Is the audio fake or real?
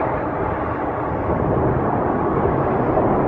real